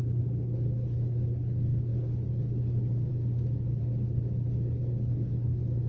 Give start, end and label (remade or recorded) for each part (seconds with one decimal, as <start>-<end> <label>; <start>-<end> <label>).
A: 0.0-3.1 remade; 3.1-3.8 recorded; 3.8-5.9 remade

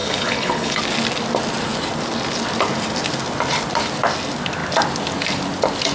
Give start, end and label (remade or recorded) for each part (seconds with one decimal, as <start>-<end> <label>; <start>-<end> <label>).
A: 0.0-0.8 remade; 0.8-5.9 recorded

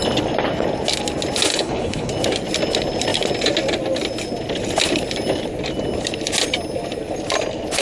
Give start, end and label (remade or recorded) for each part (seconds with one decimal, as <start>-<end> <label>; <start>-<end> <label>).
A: 0.0-1.5 recorded; 1.5-2.1 remade; 2.1-7.8 recorded

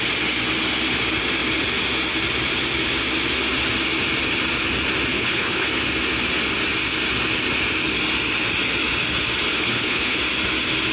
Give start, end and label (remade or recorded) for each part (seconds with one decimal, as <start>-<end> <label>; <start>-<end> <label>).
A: 0.0-5.1 recorded; 5.1-5.7 remade; 5.7-9.5 recorded; 9.5-10.2 remade; 10.2-10.9 recorded

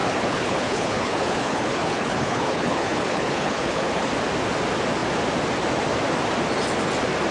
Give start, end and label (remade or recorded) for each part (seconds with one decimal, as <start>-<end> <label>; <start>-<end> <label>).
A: 0.0-4.1 remade; 4.1-7.3 recorded